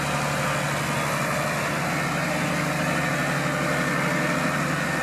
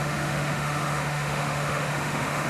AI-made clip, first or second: second